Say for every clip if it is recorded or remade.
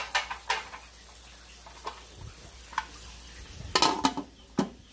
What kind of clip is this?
recorded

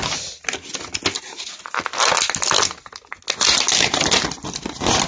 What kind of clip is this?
recorded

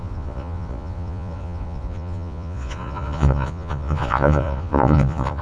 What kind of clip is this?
remade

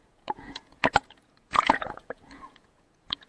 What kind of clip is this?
remade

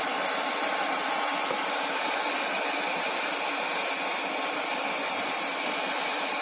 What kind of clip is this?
recorded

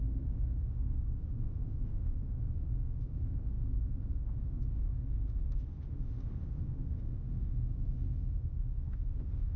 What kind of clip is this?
remade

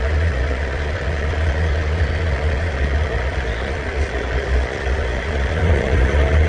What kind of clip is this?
remade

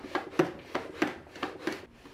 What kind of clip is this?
recorded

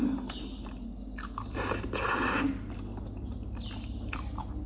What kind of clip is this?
recorded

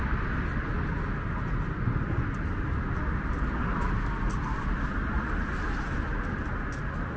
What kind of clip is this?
recorded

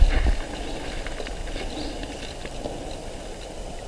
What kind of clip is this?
recorded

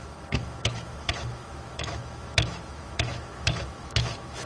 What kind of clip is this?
remade